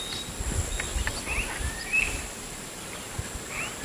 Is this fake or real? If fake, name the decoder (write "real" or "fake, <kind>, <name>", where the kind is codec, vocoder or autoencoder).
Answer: real